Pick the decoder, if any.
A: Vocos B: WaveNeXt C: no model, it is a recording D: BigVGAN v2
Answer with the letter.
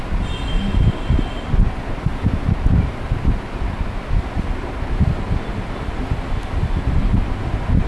C